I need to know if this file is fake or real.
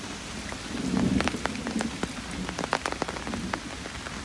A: real